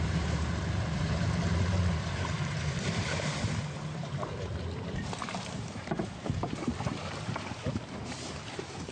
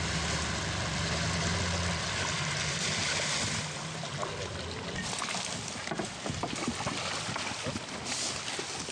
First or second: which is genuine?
second